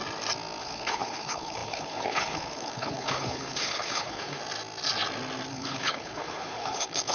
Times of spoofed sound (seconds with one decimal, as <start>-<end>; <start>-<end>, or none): 0.6-4.4; 5.5-7.1